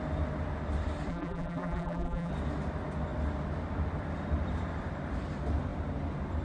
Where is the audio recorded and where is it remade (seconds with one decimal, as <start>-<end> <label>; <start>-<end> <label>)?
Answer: 0.0-1.1 recorded; 1.1-2.3 remade; 2.3-6.4 recorded